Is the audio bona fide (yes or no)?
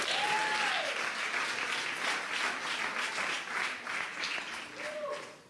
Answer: yes